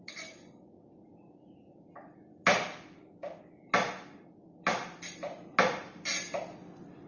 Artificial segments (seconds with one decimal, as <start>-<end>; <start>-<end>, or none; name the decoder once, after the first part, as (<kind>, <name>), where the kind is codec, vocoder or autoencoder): none